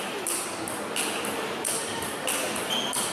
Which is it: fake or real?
real